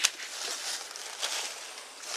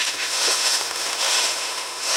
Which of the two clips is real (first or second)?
first